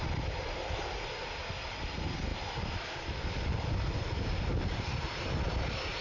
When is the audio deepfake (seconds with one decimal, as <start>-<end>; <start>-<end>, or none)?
2.3-3.6